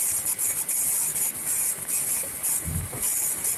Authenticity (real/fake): real